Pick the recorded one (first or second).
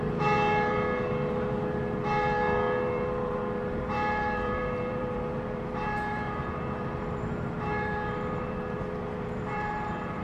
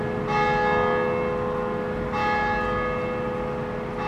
second